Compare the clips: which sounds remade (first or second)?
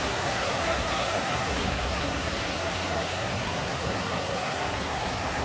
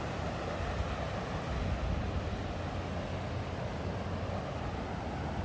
first